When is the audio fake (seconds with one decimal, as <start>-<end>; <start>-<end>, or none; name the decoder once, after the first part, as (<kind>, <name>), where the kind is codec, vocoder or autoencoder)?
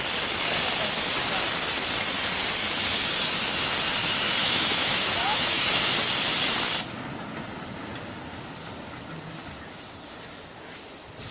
4.4-5.8 (autoencoder, DAC-VAE)